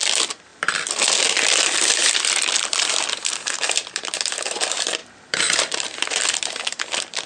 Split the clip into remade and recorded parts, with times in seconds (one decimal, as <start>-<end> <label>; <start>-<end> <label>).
0.0-0.5 recorded; 0.5-1.0 remade; 1.0-2.0 recorded; 2.0-4.3 remade; 4.3-5.0 recorded; 5.0-6.4 remade; 6.4-7.3 recorded